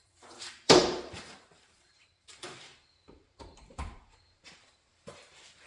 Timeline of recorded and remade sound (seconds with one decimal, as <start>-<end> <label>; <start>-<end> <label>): 0.0-5.7 remade